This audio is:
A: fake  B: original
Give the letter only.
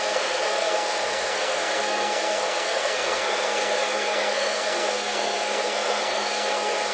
A